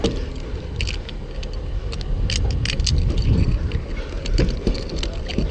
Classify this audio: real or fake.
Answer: real